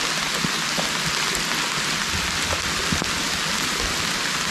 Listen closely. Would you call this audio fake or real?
real